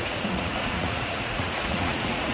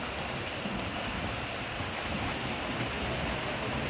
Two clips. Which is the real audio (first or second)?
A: second